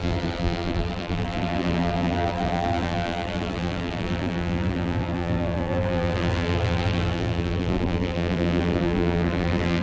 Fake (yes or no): yes